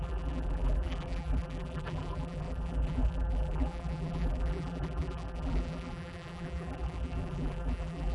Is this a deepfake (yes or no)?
yes